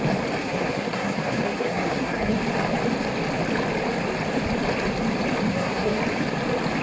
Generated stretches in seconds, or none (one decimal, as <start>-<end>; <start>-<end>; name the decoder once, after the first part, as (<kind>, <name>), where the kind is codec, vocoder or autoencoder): 0.4-2.4 (codec, SNAC); 5.5-6.0